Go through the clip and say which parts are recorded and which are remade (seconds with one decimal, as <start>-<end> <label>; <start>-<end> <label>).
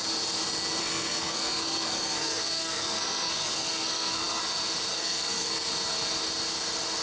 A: 0.0-0.8 recorded; 0.8-4.4 remade; 4.4-4.9 recorded; 4.9-5.7 remade; 5.7-7.0 recorded